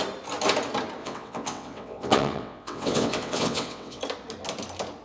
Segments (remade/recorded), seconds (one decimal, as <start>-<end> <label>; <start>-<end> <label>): 0.0-1.0 recorded; 1.0-4.0 remade; 4.0-5.0 recorded